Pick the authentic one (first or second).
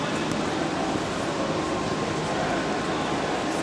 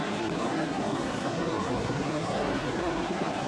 first